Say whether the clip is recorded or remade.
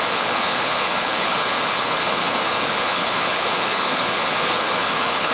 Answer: remade